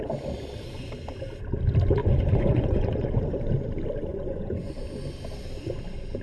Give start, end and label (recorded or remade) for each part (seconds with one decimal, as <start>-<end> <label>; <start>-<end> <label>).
0.0-2.0 recorded; 2.0-3.2 remade; 3.2-4.1 recorded; 4.1-4.7 remade; 4.7-6.2 recorded